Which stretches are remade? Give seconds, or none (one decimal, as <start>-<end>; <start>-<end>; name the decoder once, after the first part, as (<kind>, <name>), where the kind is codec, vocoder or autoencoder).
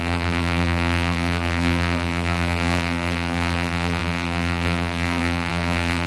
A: 0.0-6.1 (vocoder, BigVGAN v2)